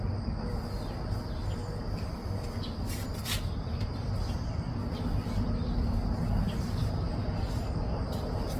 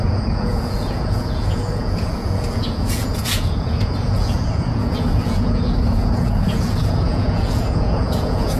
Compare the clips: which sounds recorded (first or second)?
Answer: first